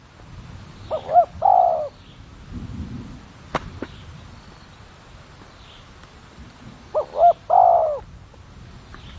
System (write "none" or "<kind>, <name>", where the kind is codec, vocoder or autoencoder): none